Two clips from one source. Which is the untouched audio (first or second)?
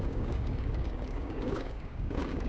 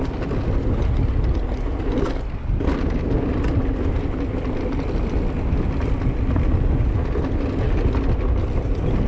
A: second